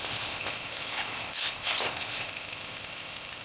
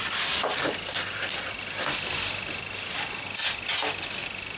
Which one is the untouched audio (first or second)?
second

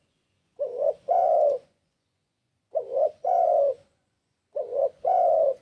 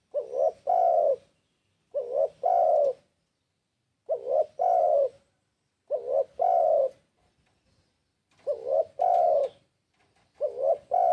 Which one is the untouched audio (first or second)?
second